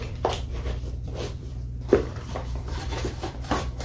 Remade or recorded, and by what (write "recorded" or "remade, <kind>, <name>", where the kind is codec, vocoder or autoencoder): remade, vocoder, BigVGAN v2